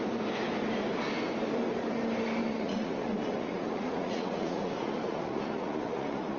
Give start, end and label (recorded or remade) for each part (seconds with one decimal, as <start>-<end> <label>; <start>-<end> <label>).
0.0-2.4 recorded; 2.4-6.4 remade